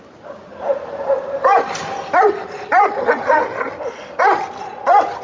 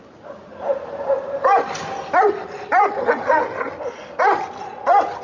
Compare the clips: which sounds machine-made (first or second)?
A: first